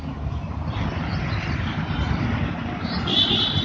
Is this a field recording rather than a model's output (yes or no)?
yes